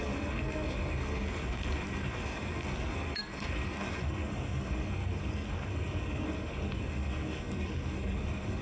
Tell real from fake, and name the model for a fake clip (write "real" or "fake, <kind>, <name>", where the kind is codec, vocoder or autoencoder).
fake, codec, SNAC